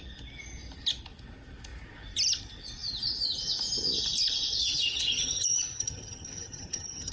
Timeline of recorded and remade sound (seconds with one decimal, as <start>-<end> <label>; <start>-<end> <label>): 0.0-4.6 recorded; 4.6-7.1 remade